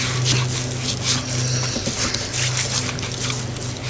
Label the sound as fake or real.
real